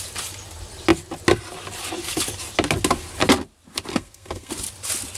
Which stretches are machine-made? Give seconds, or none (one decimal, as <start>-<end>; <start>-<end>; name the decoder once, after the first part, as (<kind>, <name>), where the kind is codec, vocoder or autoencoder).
3.9-4.5 (codec, SNAC)